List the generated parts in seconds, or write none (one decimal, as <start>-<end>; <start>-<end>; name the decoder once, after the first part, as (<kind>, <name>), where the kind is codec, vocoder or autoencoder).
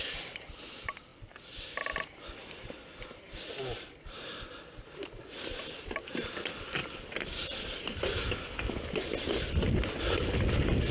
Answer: none